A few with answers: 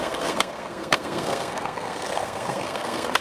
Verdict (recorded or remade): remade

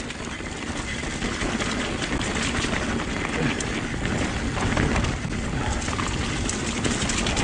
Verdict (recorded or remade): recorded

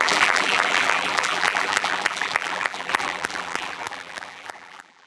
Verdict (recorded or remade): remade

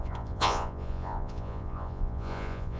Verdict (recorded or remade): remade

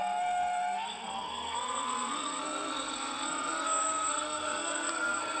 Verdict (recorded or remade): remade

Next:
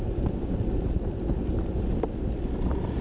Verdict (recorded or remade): recorded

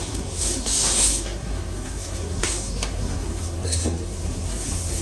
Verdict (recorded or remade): remade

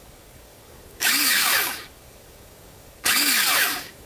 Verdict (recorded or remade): remade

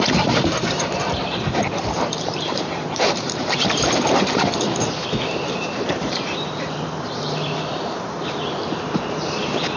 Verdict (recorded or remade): remade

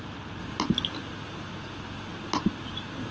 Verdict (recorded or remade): recorded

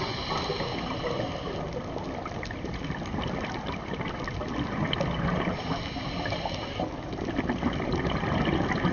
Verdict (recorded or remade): recorded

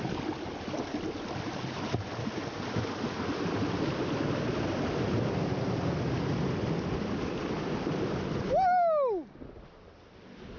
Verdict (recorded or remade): recorded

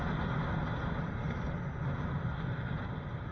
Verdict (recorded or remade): recorded